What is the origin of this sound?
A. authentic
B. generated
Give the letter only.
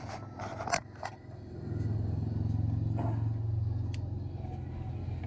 A